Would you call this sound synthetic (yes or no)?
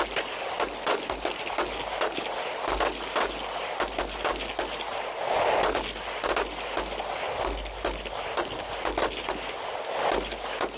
no